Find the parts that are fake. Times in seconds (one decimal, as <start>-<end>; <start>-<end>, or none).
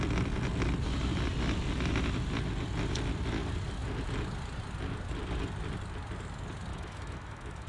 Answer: 6.7-7.7